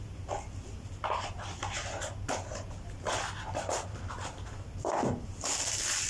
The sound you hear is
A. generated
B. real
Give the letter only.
B